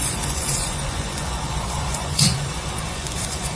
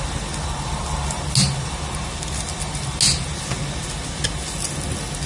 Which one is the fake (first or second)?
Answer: first